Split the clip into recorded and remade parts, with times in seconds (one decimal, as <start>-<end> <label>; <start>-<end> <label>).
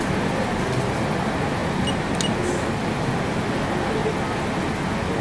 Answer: 0.0-5.2 recorded